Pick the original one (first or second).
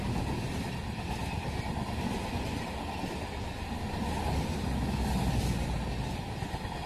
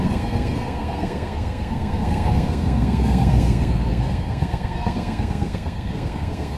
first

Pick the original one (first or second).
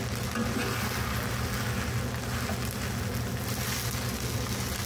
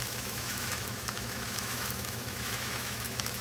first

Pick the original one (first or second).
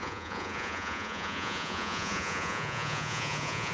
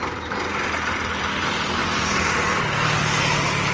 second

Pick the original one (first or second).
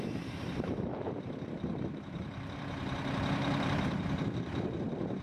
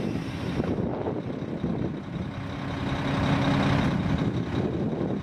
second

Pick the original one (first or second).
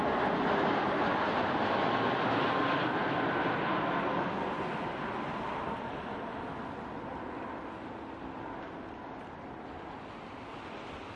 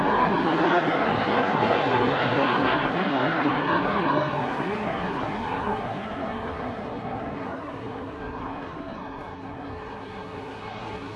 first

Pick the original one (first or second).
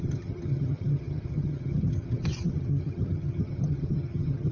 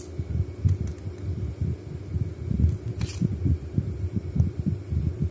second